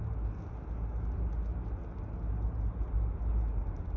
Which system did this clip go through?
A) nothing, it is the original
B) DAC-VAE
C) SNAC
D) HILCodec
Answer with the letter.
A